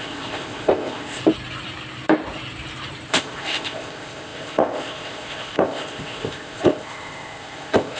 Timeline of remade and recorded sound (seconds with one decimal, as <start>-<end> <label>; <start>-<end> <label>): 0.0-1.2 remade; 1.2-3.1 recorded; 3.1-8.0 remade